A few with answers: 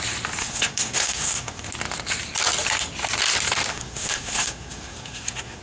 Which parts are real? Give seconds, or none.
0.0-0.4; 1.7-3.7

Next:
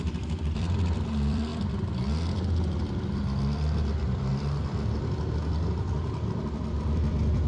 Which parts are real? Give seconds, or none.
1.5-2.8; 4.3-5.8

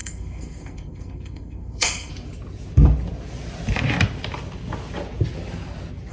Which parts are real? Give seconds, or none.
2.1-6.1

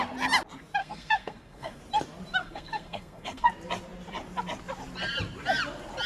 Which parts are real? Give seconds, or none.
0.0-0.8; 1.8-2.4; 3.5-6.1

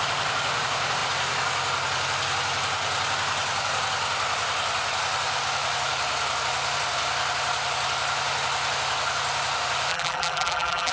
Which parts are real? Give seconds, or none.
0.0-9.9

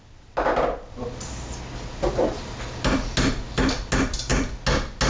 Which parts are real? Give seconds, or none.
0.0-5.1